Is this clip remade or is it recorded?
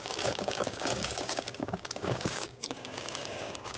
remade